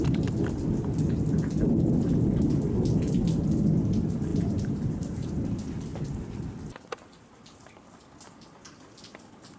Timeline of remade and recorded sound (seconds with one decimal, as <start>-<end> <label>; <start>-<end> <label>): 0.0-4.3 recorded; 4.3-5.3 remade; 5.3-9.6 recorded